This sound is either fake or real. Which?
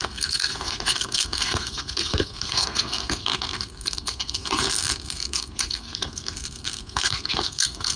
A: fake